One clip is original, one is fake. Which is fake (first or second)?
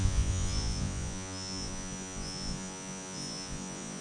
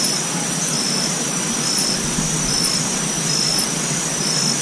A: first